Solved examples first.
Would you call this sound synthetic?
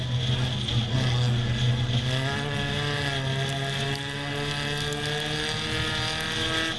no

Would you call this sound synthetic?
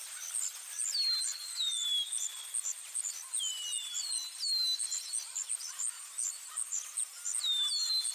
no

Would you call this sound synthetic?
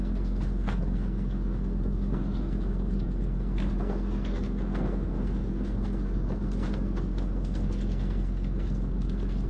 yes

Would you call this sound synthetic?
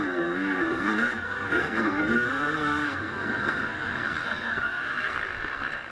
yes